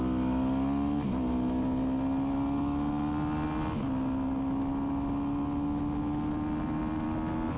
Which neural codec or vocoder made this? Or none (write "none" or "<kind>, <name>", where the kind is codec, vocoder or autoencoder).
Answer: none